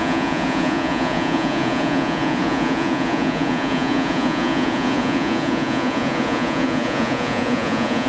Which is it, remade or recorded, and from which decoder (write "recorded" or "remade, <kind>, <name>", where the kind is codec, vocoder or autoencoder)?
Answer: remade, vocoder, Vocos